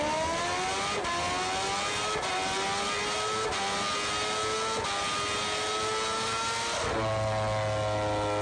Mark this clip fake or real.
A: real